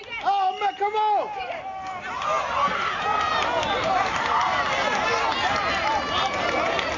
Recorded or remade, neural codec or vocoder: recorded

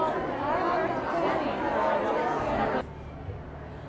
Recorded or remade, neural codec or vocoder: recorded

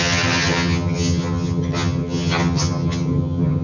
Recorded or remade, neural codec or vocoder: remade, vocoder, HiFi-GAN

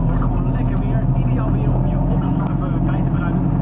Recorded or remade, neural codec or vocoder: recorded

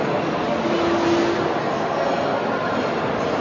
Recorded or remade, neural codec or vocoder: recorded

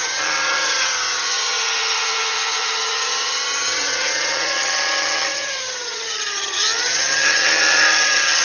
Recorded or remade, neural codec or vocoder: remade, vocoder, HiFi-GAN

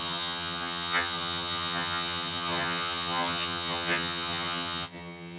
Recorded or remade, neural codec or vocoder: remade, vocoder, HiFi-GAN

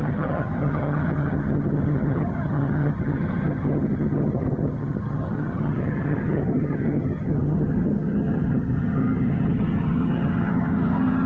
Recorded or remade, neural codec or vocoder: remade, vocoder, HiFi-GAN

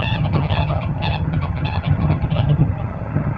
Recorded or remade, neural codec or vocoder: remade, vocoder, HiFi-GAN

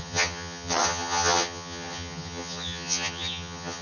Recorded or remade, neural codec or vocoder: remade, vocoder, HiFi-GAN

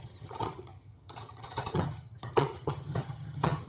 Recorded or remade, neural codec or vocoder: remade, vocoder, HiFi-GAN